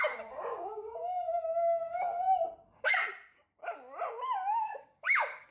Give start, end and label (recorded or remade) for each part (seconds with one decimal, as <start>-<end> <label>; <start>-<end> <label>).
0.0-1.5 remade; 1.5-4.8 recorded; 4.8-5.5 remade